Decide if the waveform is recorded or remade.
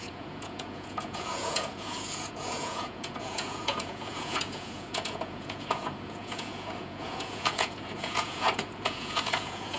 remade